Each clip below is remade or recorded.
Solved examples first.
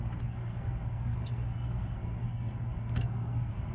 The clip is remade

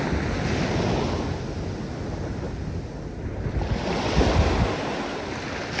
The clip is recorded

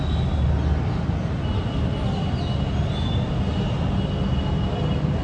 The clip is recorded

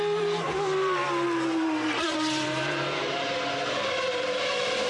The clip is remade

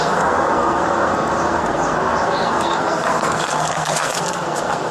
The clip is remade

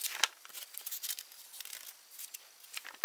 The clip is recorded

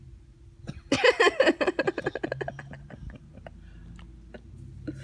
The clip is recorded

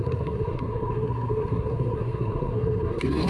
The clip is remade